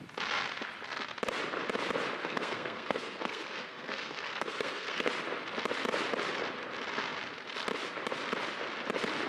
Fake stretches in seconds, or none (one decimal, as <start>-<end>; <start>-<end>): 2.2-5.1